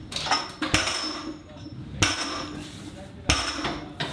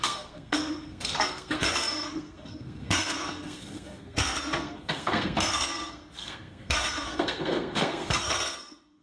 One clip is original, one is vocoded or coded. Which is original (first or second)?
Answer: first